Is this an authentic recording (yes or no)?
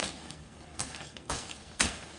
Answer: no